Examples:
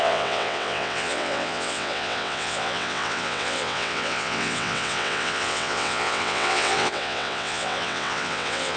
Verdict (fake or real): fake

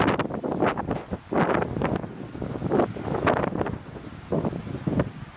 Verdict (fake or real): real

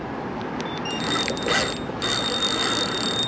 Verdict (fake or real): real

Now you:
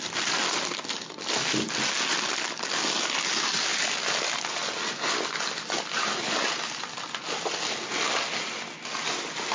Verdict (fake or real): real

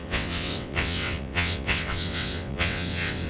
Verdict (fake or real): fake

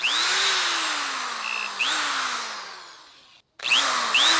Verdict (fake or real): real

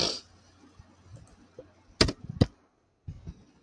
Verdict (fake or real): real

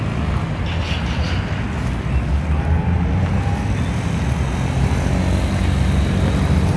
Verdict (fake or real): real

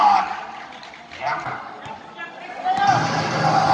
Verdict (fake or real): real